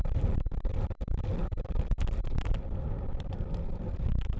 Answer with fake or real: real